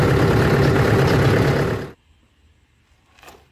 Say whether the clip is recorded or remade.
recorded